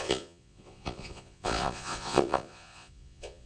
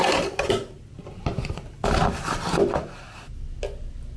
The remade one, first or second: first